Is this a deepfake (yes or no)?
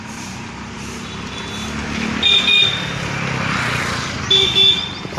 no